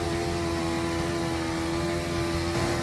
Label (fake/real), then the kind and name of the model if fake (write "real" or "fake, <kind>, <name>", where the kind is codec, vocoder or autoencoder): real